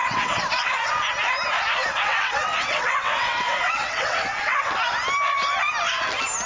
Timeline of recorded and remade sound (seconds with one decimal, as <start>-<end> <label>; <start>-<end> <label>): 0.0-0.9 remade; 0.9-1.8 recorded; 1.8-4.7 remade; 4.7-6.5 recorded